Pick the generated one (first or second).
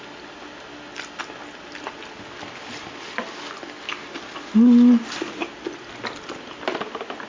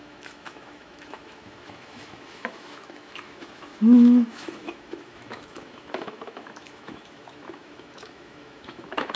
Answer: second